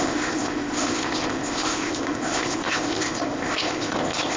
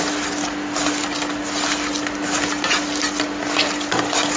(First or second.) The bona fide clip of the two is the second